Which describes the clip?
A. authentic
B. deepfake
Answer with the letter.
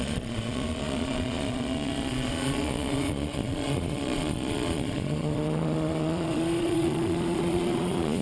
B